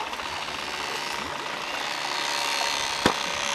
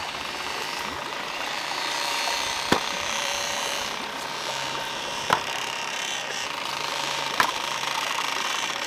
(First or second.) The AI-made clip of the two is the second